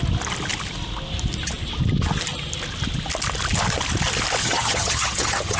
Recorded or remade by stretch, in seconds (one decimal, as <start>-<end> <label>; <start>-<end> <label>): 0.0-4.4 recorded; 4.4-5.6 remade